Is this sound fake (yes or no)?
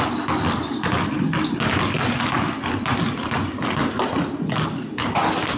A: no